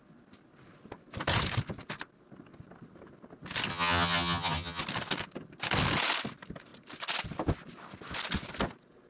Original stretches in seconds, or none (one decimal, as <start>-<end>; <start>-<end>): 0.0-3.7; 4.8-9.1